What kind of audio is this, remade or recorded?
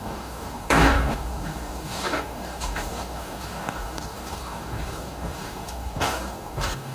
remade